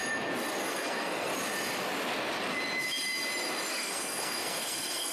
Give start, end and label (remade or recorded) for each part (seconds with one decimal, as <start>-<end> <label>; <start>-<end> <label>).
0.0-0.6 recorded; 0.6-1.3 remade; 1.3-3.7 recorded; 3.7-5.1 remade